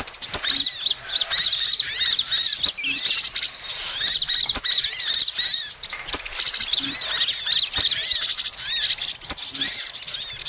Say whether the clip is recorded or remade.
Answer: recorded